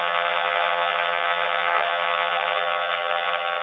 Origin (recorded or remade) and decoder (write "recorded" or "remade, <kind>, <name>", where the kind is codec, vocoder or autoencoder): remade, vocoder, HiFi-GAN